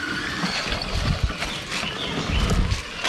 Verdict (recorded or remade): recorded